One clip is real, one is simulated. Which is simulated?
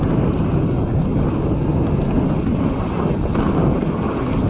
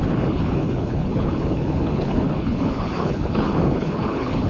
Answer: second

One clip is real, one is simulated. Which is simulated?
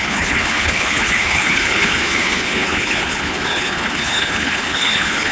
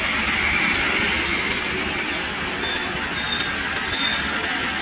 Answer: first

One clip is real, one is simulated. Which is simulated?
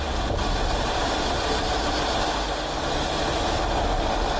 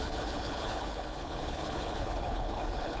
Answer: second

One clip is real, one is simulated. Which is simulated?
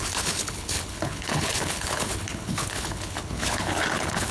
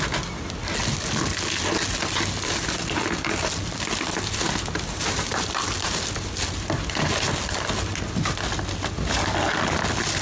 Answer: first